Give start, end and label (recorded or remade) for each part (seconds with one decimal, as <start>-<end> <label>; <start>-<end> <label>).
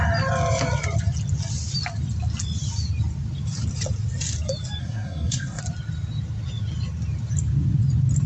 0.0-4.8 recorded; 4.8-5.6 remade; 5.6-8.3 recorded